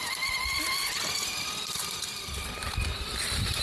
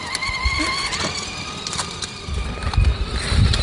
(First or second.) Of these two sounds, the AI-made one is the first